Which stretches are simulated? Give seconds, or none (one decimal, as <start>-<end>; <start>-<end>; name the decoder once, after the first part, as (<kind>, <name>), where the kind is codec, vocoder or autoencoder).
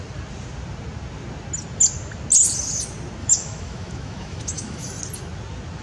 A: 3.2-5.0 (autoencoder, DAC-VAE)